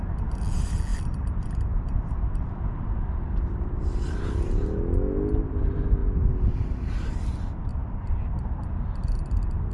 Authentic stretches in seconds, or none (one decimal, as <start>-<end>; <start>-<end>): 0.0-9.7